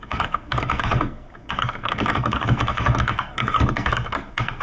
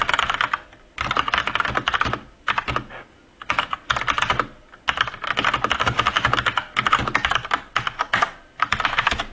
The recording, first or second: second